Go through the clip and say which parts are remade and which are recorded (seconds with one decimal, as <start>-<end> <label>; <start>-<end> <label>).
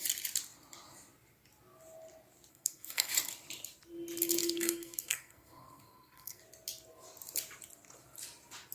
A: 0.0-2.5 recorded; 2.5-3.1 remade; 3.1-4.4 recorded; 4.4-6.4 remade; 6.4-8.7 recorded